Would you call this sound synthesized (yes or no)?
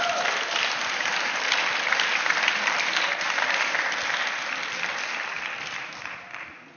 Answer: yes